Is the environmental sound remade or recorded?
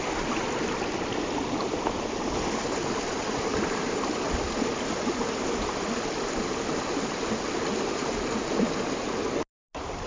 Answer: recorded